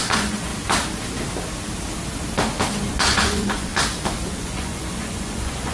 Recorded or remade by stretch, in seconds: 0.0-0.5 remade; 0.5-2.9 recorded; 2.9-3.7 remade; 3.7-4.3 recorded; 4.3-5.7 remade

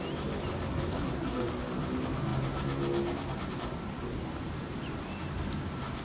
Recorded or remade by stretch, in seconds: 0.0-0.7 recorded; 0.7-1.5 remade; 1.5-6.0 recorded

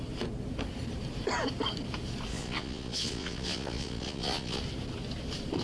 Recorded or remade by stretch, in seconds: 0.0-2.3 recorded; 2.3-4.6 remade; 4.6-5.6 recorded

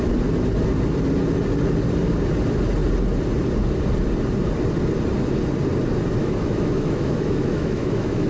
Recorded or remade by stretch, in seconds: 0.0-6.2 recorded; 6.2-8.3 remade

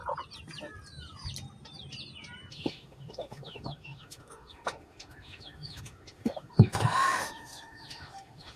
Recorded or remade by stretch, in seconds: 0.0-2.5 recorded; 2.5-8.6 remade

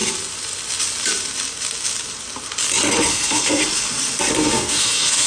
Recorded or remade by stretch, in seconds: 0.0-3.1 recorded; 3.1-3.6 remade; 3.6-4.3 recorded; 4.3-5.3 remade

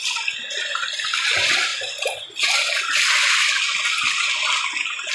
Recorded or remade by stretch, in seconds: 0.0-5.1 recorded